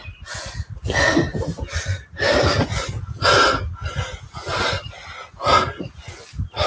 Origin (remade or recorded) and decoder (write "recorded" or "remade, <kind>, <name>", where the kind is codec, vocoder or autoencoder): recorded